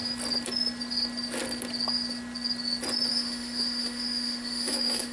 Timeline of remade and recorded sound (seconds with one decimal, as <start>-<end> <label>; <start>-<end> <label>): 0.0-3.1 recorded; 3.1-5.1 remade